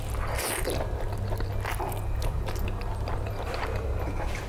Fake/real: real